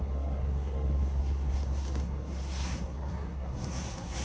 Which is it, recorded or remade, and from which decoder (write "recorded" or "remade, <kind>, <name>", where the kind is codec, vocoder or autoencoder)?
remade, codec, SNAC